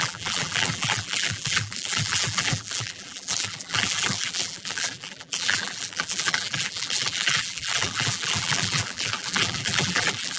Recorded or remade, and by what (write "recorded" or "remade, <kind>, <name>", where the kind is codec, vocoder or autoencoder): remade, vocoder, BigVGAN v2